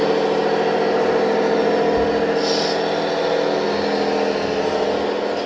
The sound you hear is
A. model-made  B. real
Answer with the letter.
B